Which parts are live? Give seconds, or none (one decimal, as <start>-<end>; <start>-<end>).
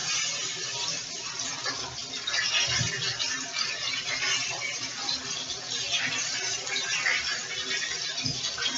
0.0-8.8